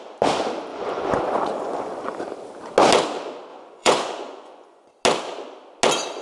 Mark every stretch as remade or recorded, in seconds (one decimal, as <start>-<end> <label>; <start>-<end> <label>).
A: 0.0-0.7 recorded; 0.7-2.2 remade; 2.2-3.5 recorded; 3.5-4.9 remade; 4.9-6.2 recorded